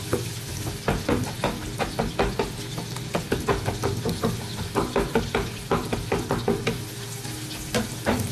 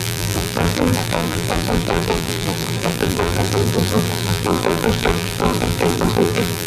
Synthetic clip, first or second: second